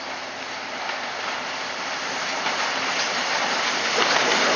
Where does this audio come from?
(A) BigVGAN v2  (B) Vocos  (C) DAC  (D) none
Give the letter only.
D